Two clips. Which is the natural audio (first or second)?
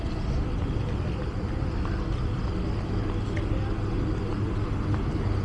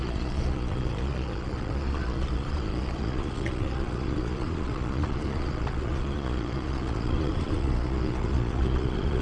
first